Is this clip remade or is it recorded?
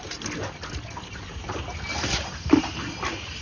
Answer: recorded